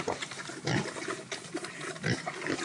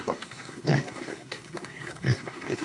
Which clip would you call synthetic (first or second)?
second